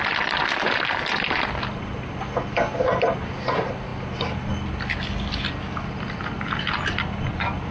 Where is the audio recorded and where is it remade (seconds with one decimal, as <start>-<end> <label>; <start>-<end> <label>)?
0.0-7.7 recorded